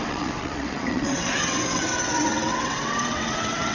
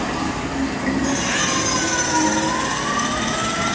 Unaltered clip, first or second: second